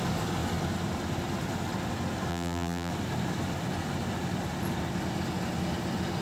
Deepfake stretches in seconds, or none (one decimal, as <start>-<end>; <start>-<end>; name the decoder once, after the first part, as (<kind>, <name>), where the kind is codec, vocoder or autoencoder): 2.3-2.9 (vocoder, BigVGAN v2)